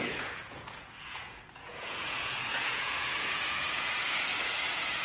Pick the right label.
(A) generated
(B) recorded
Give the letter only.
A